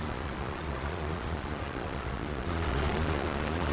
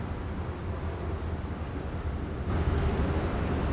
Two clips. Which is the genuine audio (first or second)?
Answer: second